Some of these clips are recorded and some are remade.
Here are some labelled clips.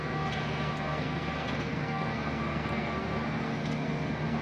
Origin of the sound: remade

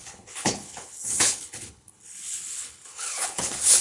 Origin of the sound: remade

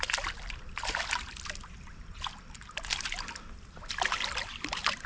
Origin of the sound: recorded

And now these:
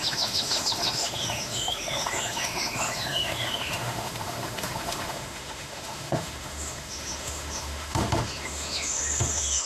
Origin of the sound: remade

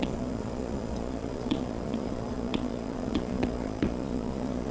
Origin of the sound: remade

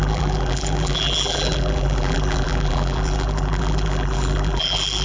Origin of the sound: remade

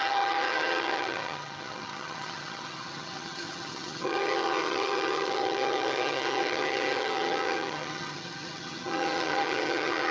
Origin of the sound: remade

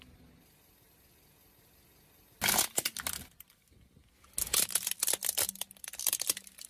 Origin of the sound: recorded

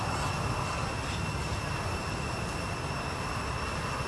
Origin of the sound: recorded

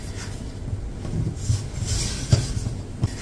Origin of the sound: recorded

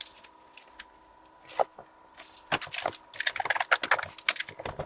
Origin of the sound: recorded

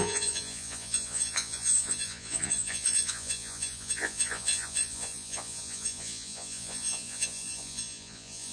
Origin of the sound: remade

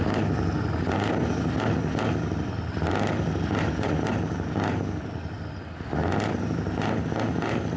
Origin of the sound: recorded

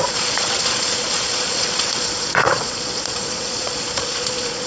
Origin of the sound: remade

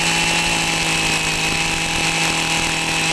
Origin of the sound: recorded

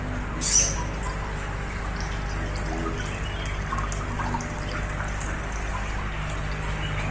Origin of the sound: recorded